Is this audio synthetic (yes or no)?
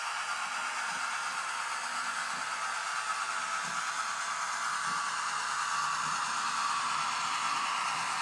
no